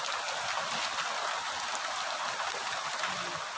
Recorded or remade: recorded